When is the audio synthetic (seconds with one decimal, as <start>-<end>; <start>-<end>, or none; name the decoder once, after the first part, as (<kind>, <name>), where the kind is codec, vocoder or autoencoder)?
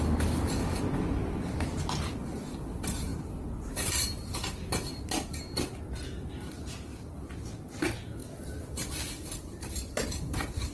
3.1-5.0 (vocoder, BigVGAN v2)